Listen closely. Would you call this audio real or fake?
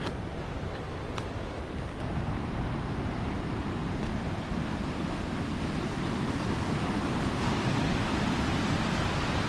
real